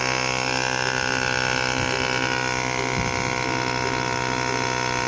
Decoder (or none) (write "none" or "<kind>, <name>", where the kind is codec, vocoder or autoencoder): none